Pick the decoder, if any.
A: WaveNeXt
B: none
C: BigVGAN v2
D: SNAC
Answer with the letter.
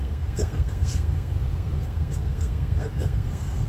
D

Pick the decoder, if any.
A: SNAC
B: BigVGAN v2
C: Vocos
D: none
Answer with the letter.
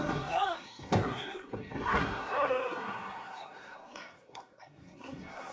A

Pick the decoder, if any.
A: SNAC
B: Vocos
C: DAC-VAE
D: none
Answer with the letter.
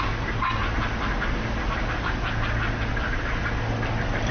D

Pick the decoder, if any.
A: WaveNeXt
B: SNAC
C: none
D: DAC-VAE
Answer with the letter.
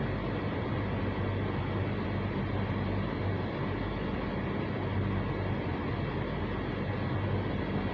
C